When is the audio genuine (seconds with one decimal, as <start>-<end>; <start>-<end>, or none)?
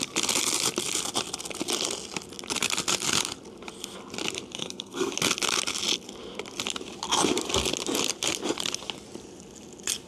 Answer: 0.0-4.6; 5.1-10.1